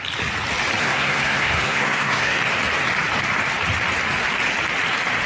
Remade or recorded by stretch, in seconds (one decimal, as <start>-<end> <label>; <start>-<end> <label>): 0.0-0.8 recorded; 0.8-2.4 remade; 2.4-5.3 recorded